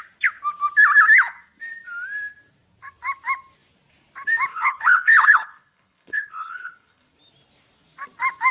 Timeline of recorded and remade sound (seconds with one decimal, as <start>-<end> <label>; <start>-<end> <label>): 0.0-4.5 recorded; 4.5-7.1 remade; 7.1-8.5 recorded